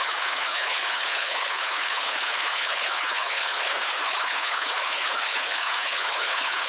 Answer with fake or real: fake